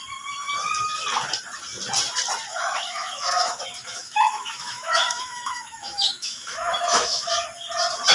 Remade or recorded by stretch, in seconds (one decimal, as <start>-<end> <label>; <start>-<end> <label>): 0.0-2.5 recorded; 2.5-7.3 remade; 7.3-8.1 recorded